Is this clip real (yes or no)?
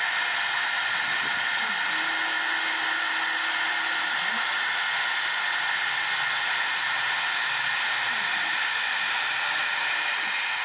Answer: yes